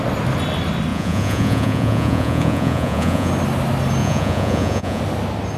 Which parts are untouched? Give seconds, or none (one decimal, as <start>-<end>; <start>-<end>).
0.0-0.9; 3.3-4.0; 5.0-5.6